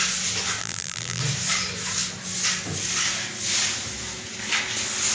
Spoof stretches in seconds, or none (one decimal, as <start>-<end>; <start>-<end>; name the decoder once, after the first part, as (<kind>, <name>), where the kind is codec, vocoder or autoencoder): 0.6-1.2 (vocoder, BigVGAN v2)